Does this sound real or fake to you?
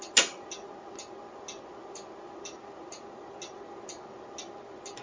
real